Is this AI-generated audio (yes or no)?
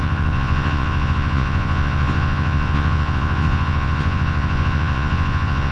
yes